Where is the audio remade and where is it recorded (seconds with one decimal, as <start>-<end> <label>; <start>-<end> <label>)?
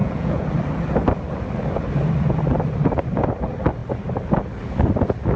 0.0-0.5 remade; 0.5-5.4 recorded